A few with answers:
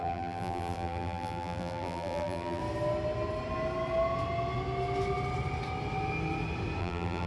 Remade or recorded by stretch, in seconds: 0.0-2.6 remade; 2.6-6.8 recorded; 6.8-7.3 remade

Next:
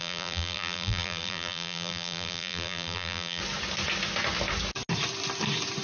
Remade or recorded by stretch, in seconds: 0.0-3.4 remade; 3.4-5.8 recorded